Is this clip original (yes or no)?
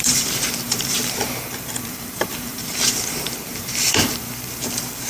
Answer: no